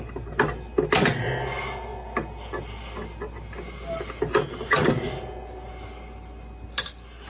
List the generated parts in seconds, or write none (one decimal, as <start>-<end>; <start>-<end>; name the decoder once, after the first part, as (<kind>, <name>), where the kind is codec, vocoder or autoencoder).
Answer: none